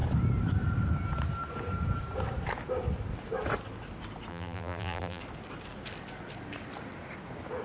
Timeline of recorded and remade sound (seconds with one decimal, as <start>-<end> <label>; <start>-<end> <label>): 0.0-4.3 recorded; 4.3-5.2 remade; 5.2-7.6 recorded